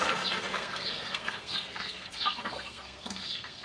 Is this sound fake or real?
fake